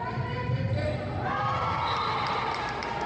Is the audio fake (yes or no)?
no